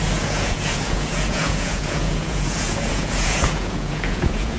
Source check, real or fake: fake